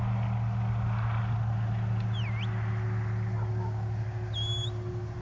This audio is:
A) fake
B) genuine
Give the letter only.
B